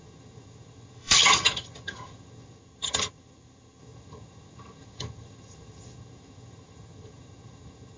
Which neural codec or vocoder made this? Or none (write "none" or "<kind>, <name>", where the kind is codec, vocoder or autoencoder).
vocoder, HiFi-GAN